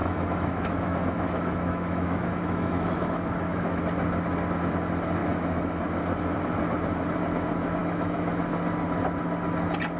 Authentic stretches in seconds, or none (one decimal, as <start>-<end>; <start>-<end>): 3.8-5.2; 5.8-7.8; 8.3-10.0